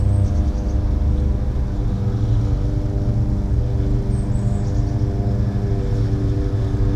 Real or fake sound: real